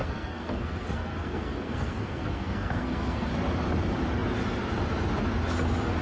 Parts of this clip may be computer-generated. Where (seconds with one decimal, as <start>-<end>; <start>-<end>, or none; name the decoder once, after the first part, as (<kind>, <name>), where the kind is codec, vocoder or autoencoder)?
0.0-3.3 (codec, SNAC)